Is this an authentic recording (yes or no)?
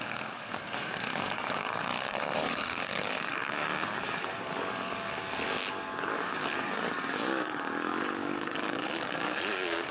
no